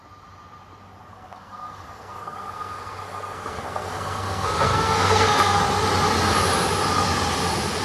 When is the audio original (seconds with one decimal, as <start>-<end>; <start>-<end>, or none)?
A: 0.0-1.1; 5.6-7.8